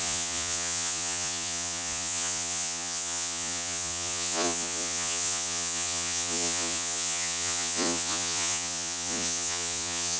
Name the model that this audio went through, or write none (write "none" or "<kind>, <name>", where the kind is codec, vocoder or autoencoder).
vocoder, Vocos